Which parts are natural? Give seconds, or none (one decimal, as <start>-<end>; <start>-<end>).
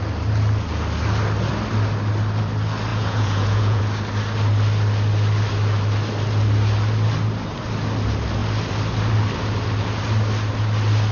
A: 0.0-2.9; 3.8-11.1